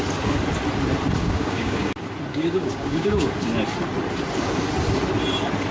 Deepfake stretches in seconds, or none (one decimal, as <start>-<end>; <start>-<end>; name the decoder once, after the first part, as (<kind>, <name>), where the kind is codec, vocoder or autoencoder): 1.2-1.9 (codec, DAC); 2.3-3.3